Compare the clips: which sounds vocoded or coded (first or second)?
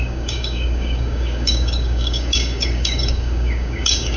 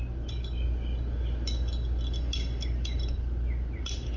first